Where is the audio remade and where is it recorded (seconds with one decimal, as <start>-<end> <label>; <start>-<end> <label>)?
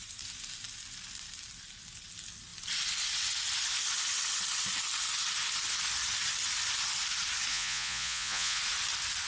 0.0-7.5 recorded; 7.5-8.6 remade; 8.6-9.3 recorded